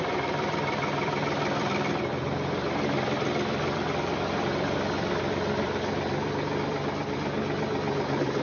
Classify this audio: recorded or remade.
remade